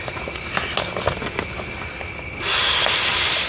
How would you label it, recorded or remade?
recorded